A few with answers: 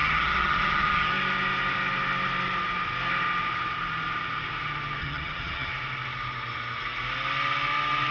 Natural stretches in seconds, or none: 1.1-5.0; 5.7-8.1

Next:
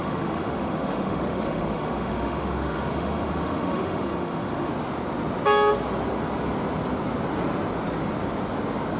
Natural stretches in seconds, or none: 4.7-9.0